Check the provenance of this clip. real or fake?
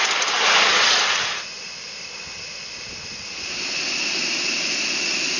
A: real